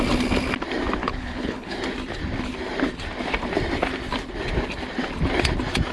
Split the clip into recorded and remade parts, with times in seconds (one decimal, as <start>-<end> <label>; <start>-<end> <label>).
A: 0.0-1.0 recorded; 1.0-1.8 remade; 1.8-5.9 recorded